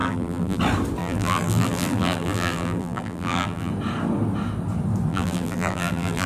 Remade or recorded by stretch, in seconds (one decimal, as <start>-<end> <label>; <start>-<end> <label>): 0.0-0.6 remade; 0.6-1.0 recorded; 1.0-3.7 remade; 3.7-5.1 recorded; 5.1-6.3 remade